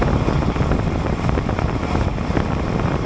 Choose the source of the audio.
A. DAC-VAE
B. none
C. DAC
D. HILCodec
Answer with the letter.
B